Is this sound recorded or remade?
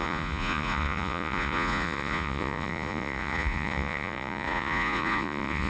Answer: remade